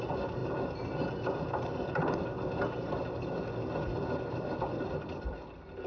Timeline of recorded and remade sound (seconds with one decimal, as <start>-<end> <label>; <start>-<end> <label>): 0.0-5.9 recorded